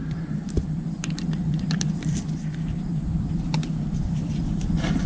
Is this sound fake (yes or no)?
yes